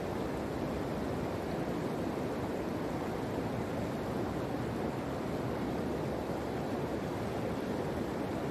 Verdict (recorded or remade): recorded